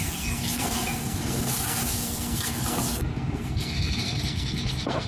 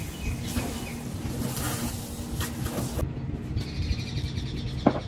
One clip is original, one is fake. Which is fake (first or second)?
first